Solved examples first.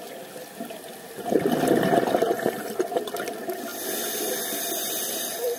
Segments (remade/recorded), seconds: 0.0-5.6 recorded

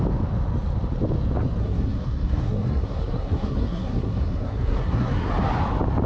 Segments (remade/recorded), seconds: 0.0-1.6 recorded; 1.6-5.3 remade; 5.3-6.1 recorded

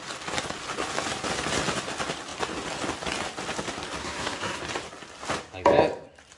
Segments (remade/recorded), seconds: 0.0-4.0 recorded; 4.0-4.6 remade; 4.6-6.4 recorded

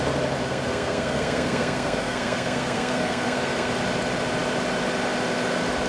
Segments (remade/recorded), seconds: 0.0-0.4 recorded; 0.4-3.7 remade; 3.7-5.9 recorded